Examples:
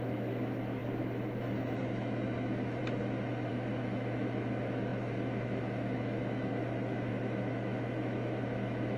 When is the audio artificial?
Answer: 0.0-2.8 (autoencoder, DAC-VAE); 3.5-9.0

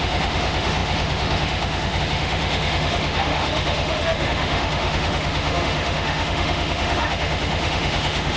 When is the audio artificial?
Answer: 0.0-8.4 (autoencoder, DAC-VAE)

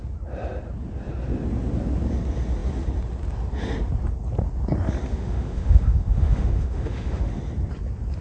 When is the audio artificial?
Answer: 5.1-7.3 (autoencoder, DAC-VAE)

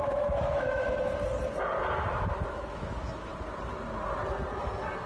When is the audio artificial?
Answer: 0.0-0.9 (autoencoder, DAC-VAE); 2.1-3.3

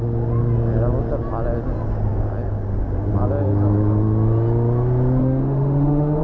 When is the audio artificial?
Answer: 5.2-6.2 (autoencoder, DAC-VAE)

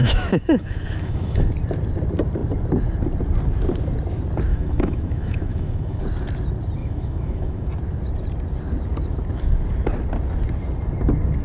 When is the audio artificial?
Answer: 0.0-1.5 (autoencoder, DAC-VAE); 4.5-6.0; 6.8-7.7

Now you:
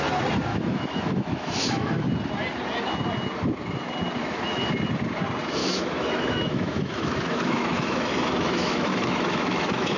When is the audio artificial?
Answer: 0.5-2.0 (autoencoder, DAC-VAE); 4.2-4.7; 5.6-10.0